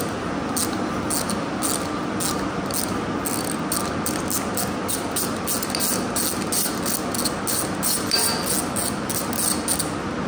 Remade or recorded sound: recorded